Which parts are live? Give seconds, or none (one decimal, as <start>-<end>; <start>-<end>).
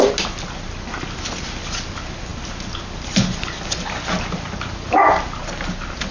0.0-6.1